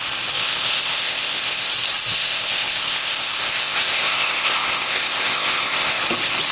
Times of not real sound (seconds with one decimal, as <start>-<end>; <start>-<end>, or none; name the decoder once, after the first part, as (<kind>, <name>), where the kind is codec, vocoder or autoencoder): 0.4-1.7 (codec, ZipCodec); 2.1-6.0